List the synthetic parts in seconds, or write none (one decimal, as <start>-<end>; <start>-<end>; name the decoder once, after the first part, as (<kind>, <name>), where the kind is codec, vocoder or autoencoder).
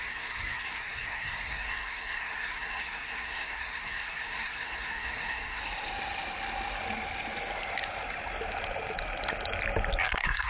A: 0.0-5.6 (codec, SNAC); 10.0-10.5